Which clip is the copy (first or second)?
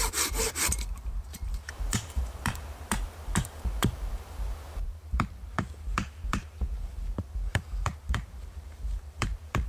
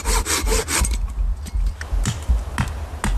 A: first